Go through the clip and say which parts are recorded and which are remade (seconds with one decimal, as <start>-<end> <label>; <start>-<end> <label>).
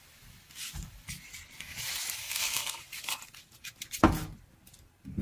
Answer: 0.0-2.2 recorded; 2.2-2.8 remade; 2.8-5.2 recorded